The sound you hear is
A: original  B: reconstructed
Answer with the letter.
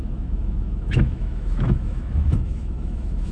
B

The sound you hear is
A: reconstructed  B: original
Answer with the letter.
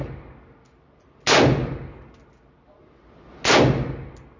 B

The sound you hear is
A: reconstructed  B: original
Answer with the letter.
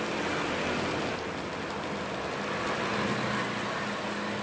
B